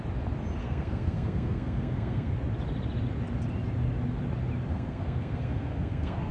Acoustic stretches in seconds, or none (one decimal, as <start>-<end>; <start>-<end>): 0.0-0.6; 2.3-4.7